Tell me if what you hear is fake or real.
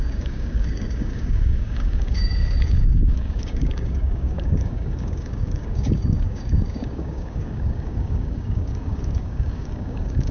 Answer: fake